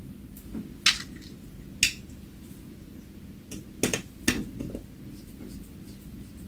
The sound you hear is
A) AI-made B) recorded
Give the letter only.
B